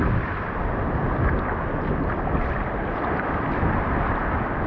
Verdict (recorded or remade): recorded